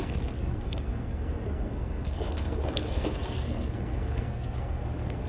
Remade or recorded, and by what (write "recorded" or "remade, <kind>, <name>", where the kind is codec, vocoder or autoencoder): remade, codec, SNAC